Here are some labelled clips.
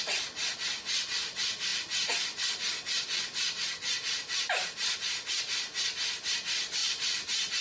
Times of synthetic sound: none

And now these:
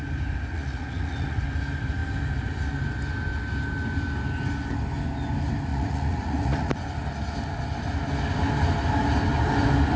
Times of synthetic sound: 0.5-1.4 (vocoder, Vocos); 5.7-6.7

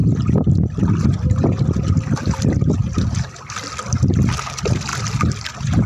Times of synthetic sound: none